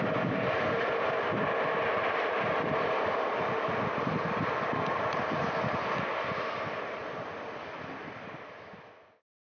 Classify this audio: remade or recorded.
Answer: recorded